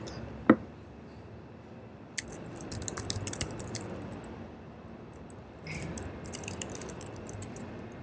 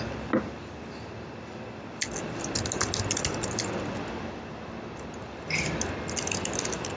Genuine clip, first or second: second